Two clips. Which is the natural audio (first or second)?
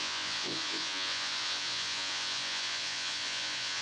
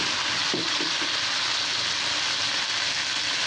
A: second